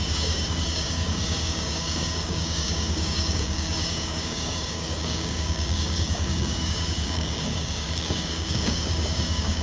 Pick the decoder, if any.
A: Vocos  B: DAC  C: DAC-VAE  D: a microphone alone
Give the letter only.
B